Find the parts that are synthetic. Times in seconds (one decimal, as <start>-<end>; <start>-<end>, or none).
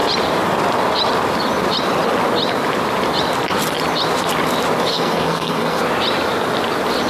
4.9-5.8